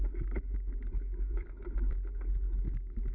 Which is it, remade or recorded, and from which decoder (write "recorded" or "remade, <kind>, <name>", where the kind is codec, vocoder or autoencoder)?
recorded